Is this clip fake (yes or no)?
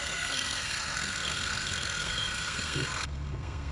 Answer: yes